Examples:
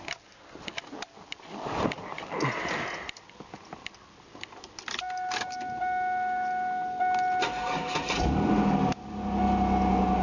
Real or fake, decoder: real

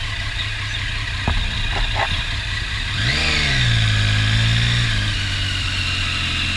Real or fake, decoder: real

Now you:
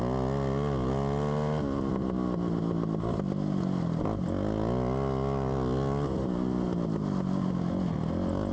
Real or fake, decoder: real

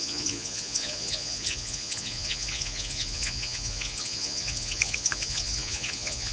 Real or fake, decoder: fake, vocoder, Vocos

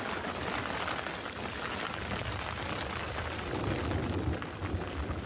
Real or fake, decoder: real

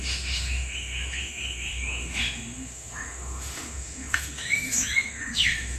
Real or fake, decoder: fake, autoencoder, DAC-VAE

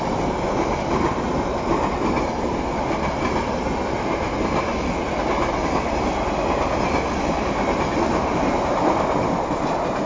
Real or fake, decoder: real